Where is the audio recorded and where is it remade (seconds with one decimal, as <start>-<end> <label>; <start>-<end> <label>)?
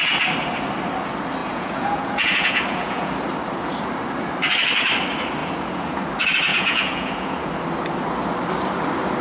0.0-1.4 recorded; 1.4-3.1 remade; 3.1-5.4 recorded; 5.4-6.0 remade; 6.0-6.5 recorded; 6.5-7.5 remade; 7.5-9.2 recorded